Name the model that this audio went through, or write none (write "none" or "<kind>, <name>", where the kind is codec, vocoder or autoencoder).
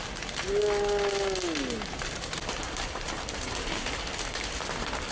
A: none